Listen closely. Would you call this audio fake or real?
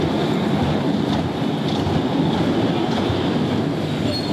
real